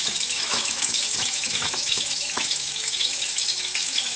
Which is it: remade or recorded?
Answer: remade